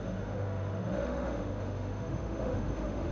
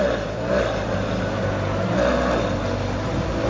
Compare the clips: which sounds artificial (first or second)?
first